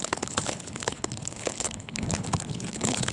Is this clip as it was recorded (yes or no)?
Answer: no